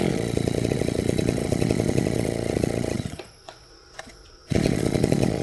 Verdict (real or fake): fake